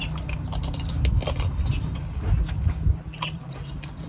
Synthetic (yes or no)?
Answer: no